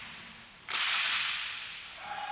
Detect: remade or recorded recorded